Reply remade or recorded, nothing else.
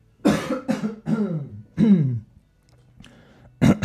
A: recorded